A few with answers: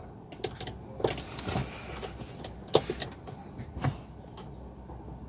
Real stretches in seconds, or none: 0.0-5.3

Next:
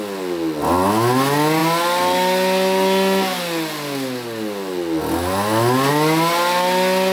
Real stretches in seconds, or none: 0.0-7.1

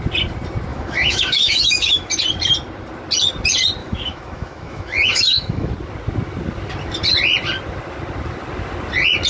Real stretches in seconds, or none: 0.0-0.7; 2.1-3.8; 5.7-9.3